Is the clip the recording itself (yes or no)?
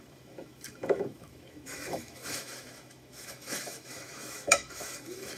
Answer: no